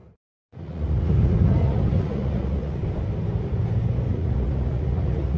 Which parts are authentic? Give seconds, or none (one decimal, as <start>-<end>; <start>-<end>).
2.8-4.1